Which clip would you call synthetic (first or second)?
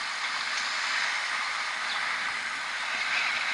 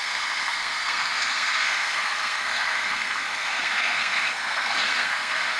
second